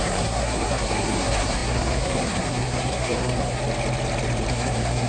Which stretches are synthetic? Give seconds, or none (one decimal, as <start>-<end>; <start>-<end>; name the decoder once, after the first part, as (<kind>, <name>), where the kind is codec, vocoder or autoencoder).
0.0-3.6 (codec, SNAC); 4.5-5.1